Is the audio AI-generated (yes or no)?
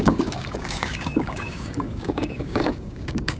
yes